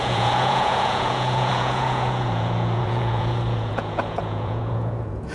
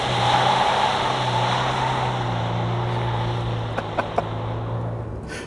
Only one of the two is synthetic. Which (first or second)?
first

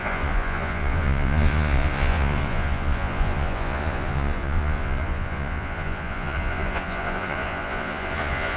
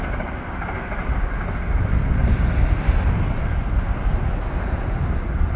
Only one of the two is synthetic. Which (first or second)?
first